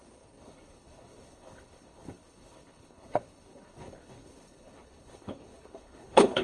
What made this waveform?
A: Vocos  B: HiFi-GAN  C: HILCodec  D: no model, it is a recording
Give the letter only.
C